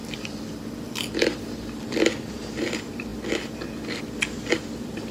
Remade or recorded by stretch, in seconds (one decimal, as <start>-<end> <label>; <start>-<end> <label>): 0.0-5.1 recorded

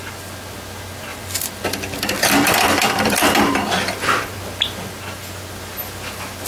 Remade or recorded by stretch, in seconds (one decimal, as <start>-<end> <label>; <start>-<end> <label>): 0.0-1.1 recorded; 1.1-4.4 remade; 4.4-6.5 recorded

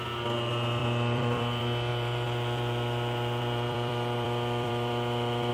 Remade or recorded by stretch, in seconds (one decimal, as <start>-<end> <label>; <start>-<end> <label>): 0.0-0.8 recorded; 0.8-1.4 remade; 1.4-1.9 recorded; 1.9-5.5 remade

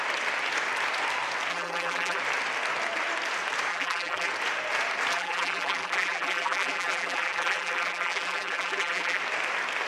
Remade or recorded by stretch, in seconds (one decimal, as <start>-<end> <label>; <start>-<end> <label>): 0.0-1.5 recorded; 1.5-2.2 remade; 2.2-3.7 recorded; 3.7-4.3 remade; 4.3-5.1 recorded; 5.1-9.2 remade; 9.2-9.9 recorded

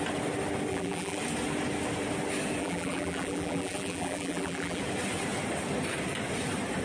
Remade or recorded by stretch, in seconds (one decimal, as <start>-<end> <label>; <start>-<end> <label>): 0.0-0.7 recorded; 0.7-1.2 remade; 1.2-2.6 recorded; 2.6-4.8 remade; 4.8-6.8 recorded

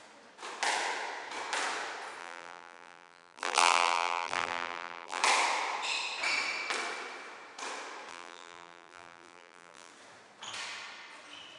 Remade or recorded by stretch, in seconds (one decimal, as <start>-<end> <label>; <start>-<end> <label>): 0.0-2.2 recorded; 2.2-5.2 remade; 5.2-8.1 recorded; 8.1-9.9 remade; 9.9-11.6 recorded

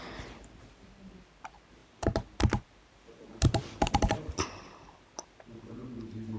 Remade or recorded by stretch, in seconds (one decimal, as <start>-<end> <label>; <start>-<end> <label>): 0.0-1.8 recorded; 1.8-5.6 remade; 5.6-6.4 recorded

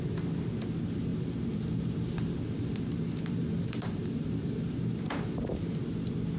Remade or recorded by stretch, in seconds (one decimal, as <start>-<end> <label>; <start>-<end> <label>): 0.0-5.8 remade; 5.8-6.4 recorded